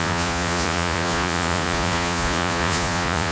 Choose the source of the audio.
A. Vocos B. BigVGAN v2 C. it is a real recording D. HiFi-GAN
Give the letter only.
A